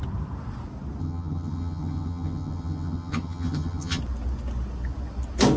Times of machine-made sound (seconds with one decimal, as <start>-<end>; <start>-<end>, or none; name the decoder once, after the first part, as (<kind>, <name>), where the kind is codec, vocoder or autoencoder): 1.0-4.0 (vocoder, HiFi-GAN)